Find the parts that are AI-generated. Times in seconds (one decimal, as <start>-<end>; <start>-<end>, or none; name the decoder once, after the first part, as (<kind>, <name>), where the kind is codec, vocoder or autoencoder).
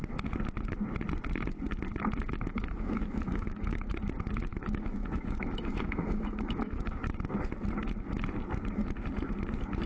2.5-3.9 (autoencoder, DAC-VAE); 4.5-7.0